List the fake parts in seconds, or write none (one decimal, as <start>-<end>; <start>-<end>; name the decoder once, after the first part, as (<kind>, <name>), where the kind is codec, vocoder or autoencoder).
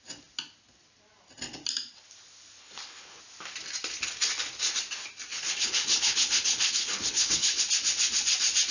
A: 2.6-3.2 (codec, HILCodec); 5.3-7.6